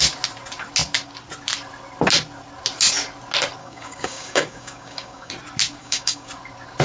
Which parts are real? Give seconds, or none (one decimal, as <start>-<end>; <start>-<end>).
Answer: 0.0-3.6; 5.3-5.8; 6.3-6.8